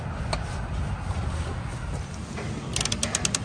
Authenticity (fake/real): real